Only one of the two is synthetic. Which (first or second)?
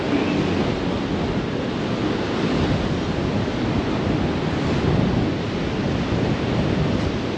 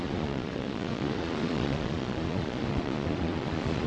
second